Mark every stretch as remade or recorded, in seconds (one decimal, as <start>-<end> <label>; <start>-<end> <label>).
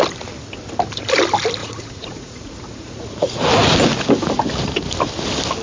0.0-1.6 recorded; 1.6-3.4 remade; 3.4-5.6 recorded